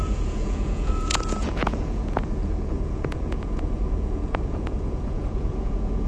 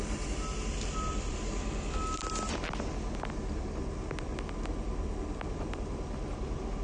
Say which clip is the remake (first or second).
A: first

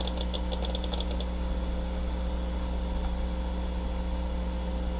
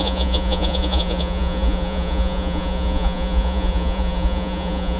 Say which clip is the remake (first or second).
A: second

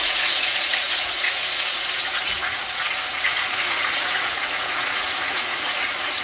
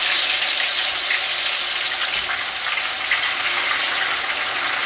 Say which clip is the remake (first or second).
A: first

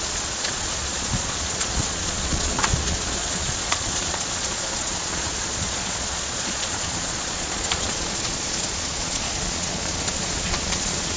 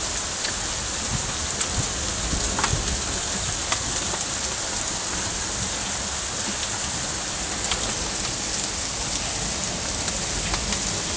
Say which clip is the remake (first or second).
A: first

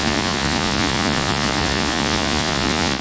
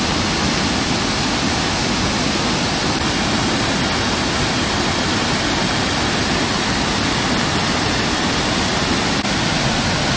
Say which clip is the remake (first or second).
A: first